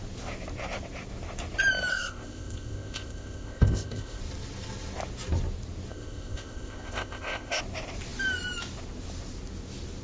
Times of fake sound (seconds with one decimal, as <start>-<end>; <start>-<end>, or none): 1.9-4.2; 5.9-7.6